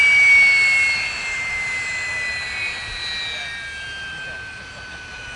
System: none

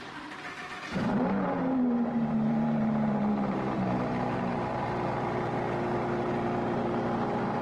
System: vocoder, BigVGAN v2